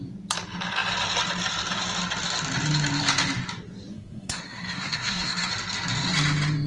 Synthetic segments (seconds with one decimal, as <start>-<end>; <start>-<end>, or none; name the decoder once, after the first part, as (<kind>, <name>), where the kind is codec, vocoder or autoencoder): 3.9-5.5 (codec, SNAC)